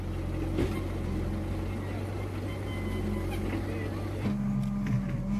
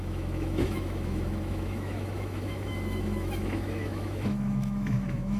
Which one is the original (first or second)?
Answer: first